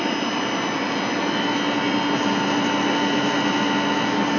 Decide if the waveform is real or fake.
real